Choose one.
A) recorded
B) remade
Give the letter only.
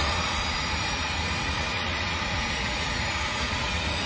B